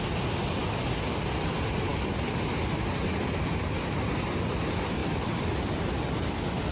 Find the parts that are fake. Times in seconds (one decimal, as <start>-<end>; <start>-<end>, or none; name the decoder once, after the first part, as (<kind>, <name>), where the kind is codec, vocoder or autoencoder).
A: none